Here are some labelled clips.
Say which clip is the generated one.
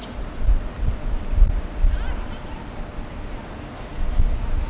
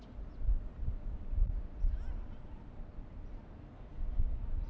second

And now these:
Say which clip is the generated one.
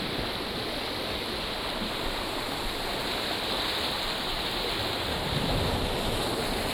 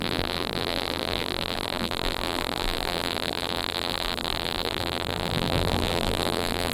second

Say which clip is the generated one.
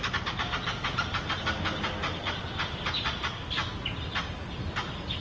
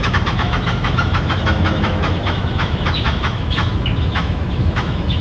second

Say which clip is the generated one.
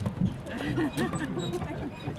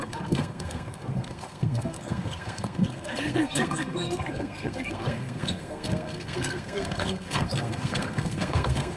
second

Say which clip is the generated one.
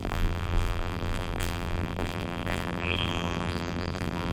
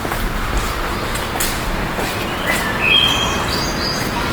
first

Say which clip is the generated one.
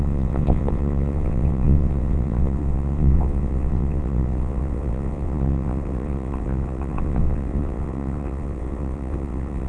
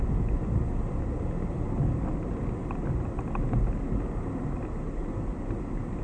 first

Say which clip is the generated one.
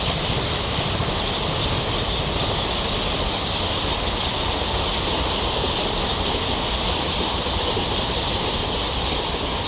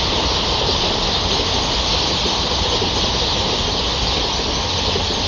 first